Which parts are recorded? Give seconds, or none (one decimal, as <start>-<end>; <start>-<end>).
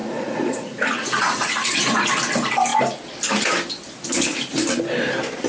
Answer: 2.1-5.5